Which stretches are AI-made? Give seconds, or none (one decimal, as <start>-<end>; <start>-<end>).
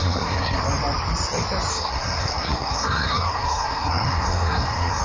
0.0-0.6; 1.7-5.0